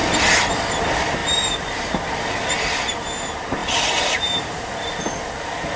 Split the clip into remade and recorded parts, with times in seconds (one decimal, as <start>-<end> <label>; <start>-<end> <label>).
0.0-3.6 recorded; 3.6-4.9 remade; 4.9-5.8 recorded